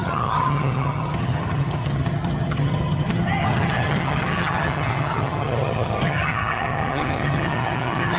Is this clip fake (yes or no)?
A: yes